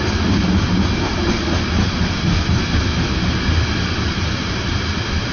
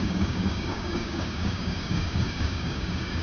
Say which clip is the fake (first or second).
second